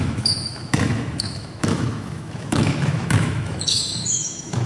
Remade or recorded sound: remade